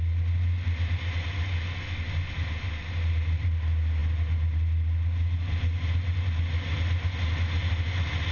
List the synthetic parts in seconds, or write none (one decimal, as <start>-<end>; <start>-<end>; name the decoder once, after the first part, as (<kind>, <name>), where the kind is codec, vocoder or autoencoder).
none